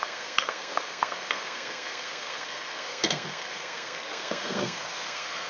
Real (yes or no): no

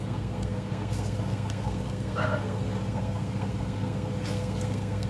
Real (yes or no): no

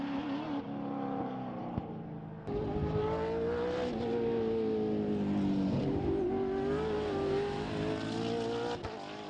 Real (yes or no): yes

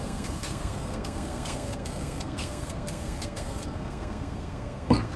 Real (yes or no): no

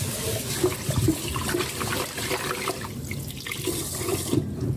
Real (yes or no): yes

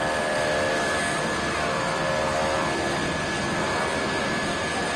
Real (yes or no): yes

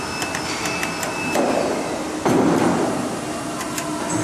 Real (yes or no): yes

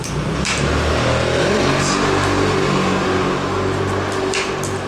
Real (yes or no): yes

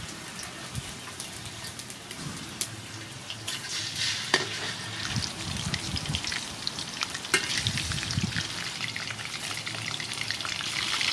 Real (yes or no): yes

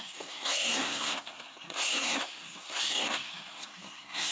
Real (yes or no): no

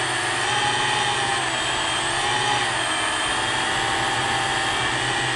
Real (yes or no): yes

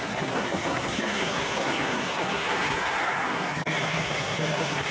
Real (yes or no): no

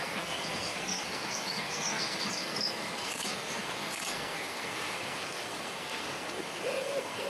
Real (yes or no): no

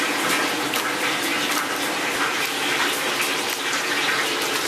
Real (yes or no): yes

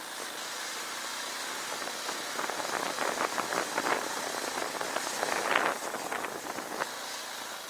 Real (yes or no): yes